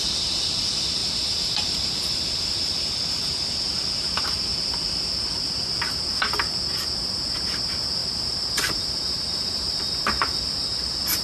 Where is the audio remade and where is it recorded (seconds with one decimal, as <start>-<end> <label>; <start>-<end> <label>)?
0.0-1.0 recorded; 1.0-3.3 remade; 3.3-8.0 recorded; 8.0-10.4 remade; 10.4-11.2 recorded